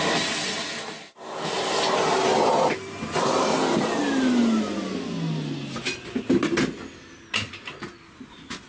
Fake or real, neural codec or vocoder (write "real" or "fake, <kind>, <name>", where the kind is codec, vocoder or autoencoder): real